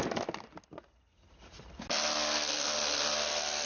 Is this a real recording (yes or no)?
yes